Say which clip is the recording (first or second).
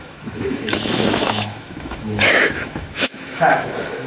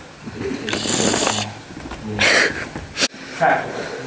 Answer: second